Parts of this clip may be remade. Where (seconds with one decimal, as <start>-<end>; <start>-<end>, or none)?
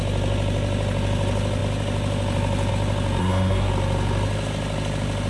3.2-3.7